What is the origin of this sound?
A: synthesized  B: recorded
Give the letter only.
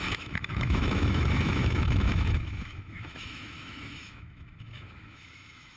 A